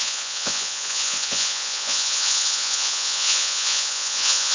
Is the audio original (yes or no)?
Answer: no